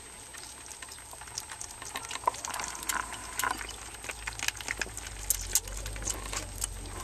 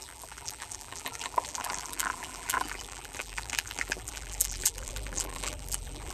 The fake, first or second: second